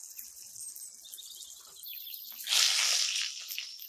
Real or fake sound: real